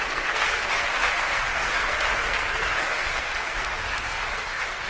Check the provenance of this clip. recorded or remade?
remade